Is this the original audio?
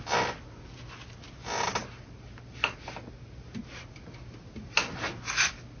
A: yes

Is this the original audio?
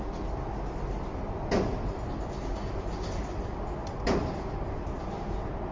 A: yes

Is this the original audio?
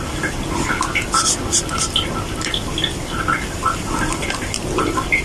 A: yes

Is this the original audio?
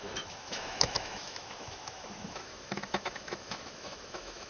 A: no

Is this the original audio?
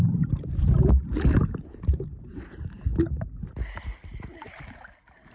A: yes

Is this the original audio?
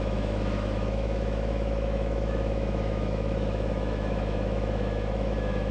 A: no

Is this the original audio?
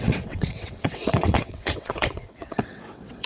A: no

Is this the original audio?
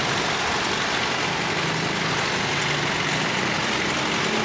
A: yes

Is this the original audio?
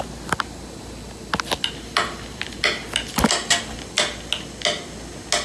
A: yes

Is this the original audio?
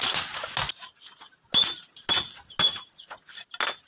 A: yes